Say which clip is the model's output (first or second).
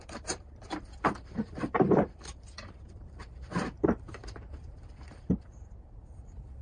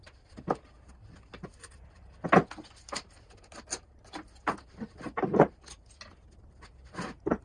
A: first